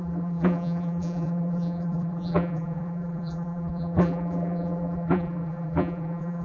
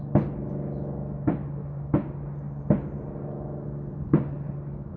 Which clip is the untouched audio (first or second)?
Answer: second